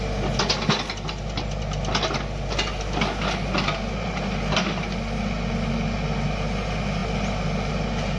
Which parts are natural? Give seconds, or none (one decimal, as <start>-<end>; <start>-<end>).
0.0-8.2